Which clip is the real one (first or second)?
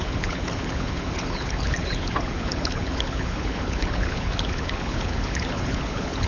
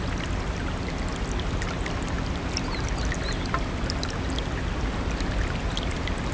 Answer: second